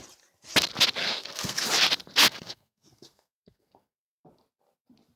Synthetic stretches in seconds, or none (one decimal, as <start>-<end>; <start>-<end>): 1.0-1.6; 2.2-4.2